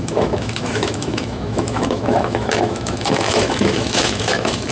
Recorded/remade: remade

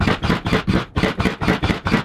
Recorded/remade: recorded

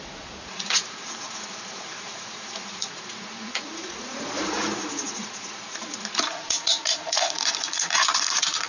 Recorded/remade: remade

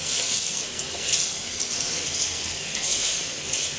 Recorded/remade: remade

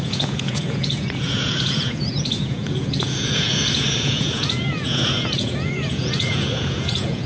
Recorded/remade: remade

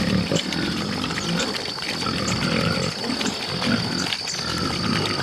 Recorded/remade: recorded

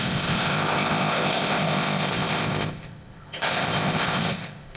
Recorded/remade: remade